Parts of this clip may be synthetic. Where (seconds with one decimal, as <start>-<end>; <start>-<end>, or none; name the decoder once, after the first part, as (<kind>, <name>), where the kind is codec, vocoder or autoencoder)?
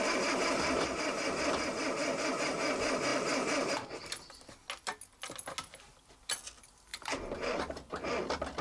3.1-4.5 (vocoder, BigVGAN v2); 6.9-7.6